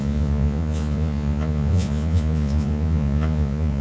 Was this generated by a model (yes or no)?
yes